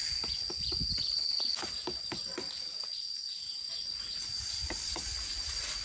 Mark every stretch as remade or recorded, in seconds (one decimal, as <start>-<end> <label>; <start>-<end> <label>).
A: 0.0-5.8 recorded